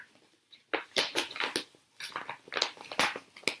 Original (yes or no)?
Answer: yes